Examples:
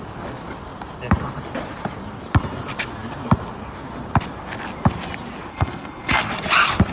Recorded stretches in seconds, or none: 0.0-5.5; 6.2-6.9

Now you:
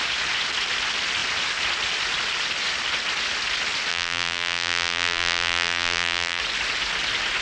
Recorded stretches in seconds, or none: 0.0-3.9; 6.4-7.4

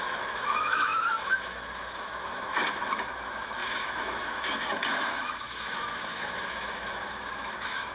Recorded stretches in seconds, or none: none